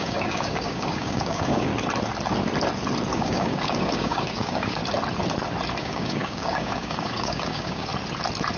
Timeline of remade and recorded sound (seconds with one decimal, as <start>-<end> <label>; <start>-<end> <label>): 0.0-1.7 remade; 1.7-3.1 recorded; 3.1-4.8 remade; 4.8-5.8 recorded; 5.8-7.9 remade; 7.9-8.6 recorded